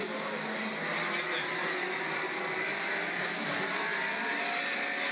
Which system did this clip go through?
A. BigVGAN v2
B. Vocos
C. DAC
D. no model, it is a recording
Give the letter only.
D